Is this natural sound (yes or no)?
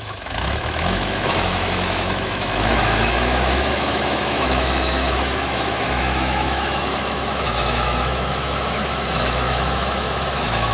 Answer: no